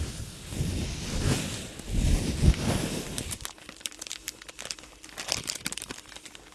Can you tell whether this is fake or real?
real